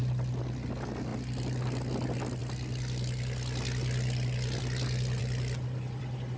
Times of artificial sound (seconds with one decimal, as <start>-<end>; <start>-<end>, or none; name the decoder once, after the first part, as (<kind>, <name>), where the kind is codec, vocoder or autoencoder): none

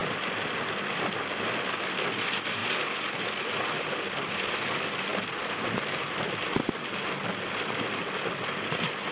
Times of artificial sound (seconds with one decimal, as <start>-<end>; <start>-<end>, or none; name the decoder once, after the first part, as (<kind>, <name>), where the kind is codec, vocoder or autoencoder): none

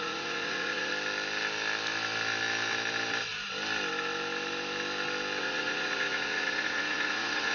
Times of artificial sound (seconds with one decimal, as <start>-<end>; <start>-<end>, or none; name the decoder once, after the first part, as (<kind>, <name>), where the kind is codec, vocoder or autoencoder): 0.0-0.9 (vocoder, Vocos); 5.4-7.5

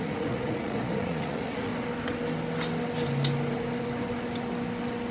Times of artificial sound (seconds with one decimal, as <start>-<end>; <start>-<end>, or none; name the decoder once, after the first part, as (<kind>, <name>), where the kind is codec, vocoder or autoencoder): 0.0-1.7 (vocoder, Vocos)

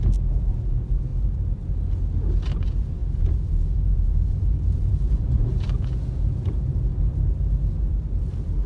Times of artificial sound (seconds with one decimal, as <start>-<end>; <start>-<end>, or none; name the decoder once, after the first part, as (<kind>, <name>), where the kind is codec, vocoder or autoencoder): 0.0-1.1 (vocoder, Vocos); 2.6-6.7

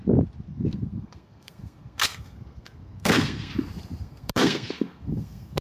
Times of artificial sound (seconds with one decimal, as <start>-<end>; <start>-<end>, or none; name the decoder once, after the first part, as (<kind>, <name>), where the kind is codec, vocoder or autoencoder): 0.5-3.5 (codec, SNAC); 4.0-5.6

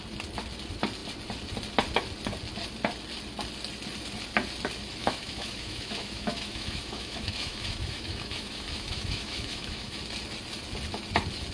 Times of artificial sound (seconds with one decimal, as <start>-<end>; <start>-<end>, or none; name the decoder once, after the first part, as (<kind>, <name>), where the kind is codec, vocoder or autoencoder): 5.0-10.0 (autoencoder, DAC-VAE)

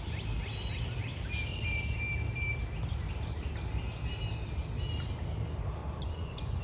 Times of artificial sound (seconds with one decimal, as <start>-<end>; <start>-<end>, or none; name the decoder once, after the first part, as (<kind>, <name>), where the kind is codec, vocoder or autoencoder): 5.8-6.6 (vocoder, Vocos)